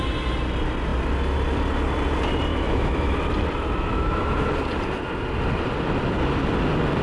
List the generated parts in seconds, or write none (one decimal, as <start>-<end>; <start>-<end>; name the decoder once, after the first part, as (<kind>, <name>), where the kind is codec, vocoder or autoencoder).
2.5-3.2 (autoencoder, DAC-VAE); 3.9-4.5